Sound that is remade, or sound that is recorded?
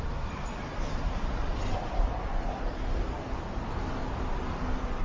recorded